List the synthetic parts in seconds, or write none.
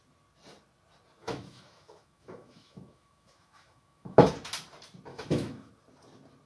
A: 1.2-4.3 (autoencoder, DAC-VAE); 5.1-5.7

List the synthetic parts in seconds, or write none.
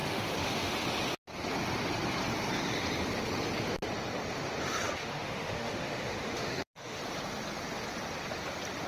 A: 0.0-0.9 (autoencoder, DAC-VAE); 5.0-7.0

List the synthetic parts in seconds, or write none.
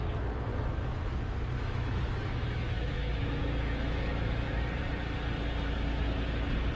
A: 0.5-4.6 (autoencoder, DAC-VAE)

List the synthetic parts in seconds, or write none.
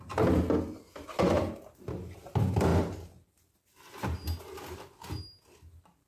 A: none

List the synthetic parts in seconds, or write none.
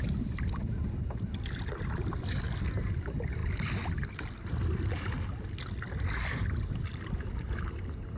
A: none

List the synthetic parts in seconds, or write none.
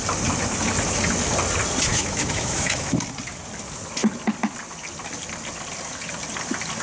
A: 1.9-2.9 (autoencoder, DAC-VAE)